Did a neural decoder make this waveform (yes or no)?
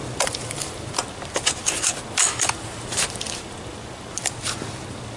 no